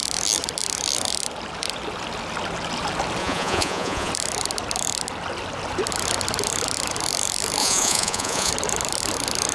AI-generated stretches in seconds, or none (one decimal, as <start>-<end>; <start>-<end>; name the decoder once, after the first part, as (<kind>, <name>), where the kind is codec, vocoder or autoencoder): 3.2-4.1 (vocoder, Vocos); 7.6-8.5